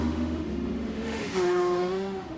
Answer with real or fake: fake